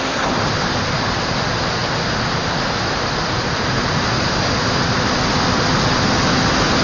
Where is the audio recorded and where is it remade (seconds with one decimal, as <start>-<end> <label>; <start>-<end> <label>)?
0.0-6.8 recorded